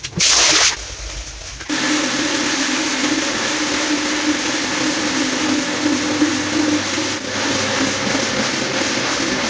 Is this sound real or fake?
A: real